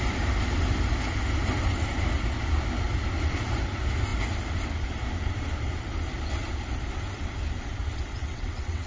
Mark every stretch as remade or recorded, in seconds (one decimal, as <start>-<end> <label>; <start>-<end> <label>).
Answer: 0.0-8.2 recorded; 8.2-8.9 remade